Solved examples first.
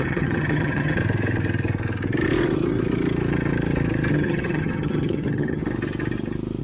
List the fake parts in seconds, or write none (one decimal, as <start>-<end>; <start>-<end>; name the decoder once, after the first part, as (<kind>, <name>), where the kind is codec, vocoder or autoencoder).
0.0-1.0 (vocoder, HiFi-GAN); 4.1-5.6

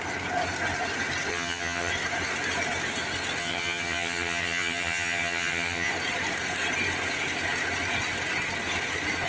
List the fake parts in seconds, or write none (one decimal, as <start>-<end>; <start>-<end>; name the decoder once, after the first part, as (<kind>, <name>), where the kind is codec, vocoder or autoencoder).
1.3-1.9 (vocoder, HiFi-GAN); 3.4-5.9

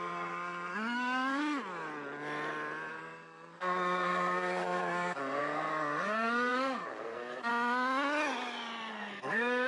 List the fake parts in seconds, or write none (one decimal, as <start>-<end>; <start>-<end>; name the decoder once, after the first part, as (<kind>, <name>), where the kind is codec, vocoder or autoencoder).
0.0-1.4 (codec, SNAC); 2.9-7.5; 8.9-9.7

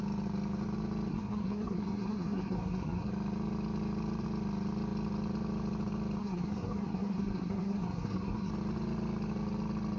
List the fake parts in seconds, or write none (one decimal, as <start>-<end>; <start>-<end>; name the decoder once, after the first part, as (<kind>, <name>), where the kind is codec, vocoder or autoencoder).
1.1-3.1 (codec, SNAC); 6.2-8.5

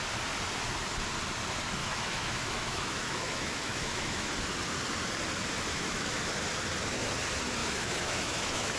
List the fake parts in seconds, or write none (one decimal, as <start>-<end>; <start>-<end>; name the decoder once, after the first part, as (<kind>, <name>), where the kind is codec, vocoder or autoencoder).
1.8-4.3 (autoencoder, DAC-VAE); 5.7-6.2; 7.6-8.8